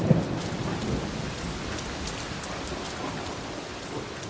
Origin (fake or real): real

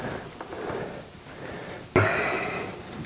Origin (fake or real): real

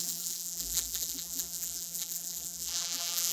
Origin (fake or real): fake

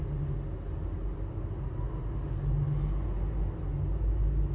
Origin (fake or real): real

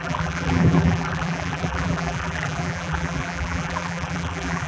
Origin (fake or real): fake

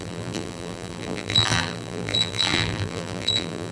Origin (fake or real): fake